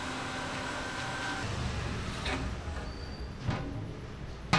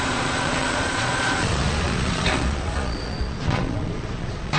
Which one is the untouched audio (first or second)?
first